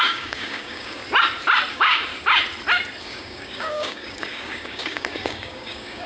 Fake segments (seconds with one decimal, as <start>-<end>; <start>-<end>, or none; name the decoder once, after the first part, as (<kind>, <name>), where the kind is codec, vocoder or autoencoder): 0.0-1.0 (codec, DAC); 1.7-2.1; 3.0-6.1

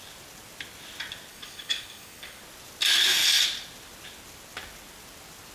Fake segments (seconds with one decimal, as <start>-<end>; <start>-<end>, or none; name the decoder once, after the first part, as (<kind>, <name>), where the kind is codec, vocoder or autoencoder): 1.3-2.4 (codec, DAC)

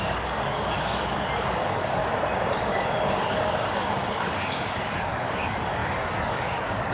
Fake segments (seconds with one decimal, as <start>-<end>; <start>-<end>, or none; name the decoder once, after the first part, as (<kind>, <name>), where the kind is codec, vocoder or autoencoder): 0.0-2.0 (codec, DAC); 2.6-6.9

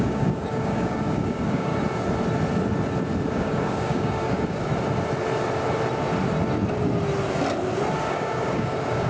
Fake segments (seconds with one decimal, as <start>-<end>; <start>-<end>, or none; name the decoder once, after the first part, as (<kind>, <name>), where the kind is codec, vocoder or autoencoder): 0.0-1.7 (codec, DAC); 3.3-4.7; 8.0-9.1